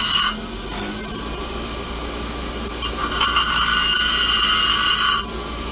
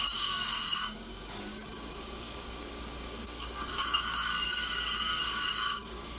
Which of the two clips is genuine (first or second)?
first